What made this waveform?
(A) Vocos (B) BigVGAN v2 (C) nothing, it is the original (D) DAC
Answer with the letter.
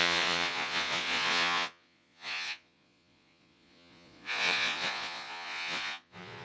A